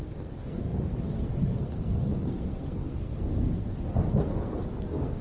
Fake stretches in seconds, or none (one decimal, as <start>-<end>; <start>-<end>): 0.0-5.2